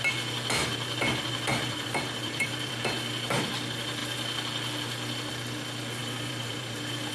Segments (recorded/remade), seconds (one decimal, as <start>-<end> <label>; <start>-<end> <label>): 0.0-1.5 recorded; 1.5-2.7 remade; 2.7-6.0 recorded; 6.0-7.1 remade

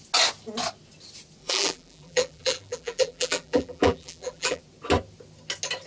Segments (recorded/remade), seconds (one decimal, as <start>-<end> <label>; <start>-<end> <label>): 0.0-1.4 recorded; 1.4-4.6 remade; 4.6-5.9 recorded

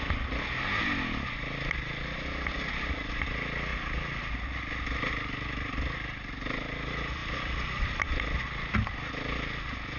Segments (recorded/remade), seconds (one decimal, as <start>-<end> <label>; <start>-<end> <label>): 0.0-3.7 recorded; 3.7-4.2 remade; 4.2-7.2 recorded; 7.2-8.0 remade; 8.0-10.0 recorded

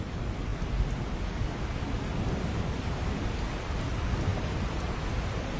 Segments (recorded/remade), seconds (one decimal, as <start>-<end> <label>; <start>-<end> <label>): 0.0-4.3 recorded; 4.3-5.0 remade; 5.0-5.6 recorded